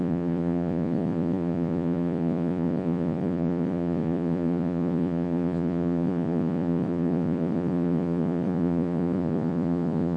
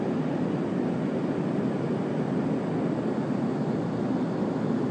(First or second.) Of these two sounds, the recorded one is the second